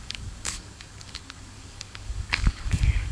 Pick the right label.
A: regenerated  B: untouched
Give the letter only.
A